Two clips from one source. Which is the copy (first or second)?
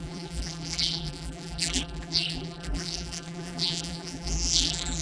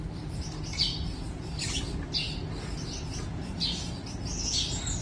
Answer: first